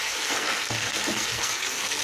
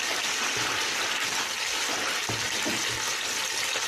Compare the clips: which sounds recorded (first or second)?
second